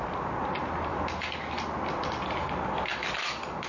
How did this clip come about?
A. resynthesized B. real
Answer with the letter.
B